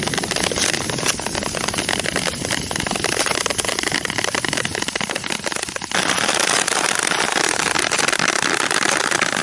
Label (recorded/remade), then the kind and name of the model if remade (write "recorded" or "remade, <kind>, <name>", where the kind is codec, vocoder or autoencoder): recorded